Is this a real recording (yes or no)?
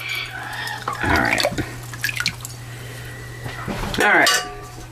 yes